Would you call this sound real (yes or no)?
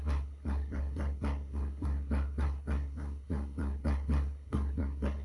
no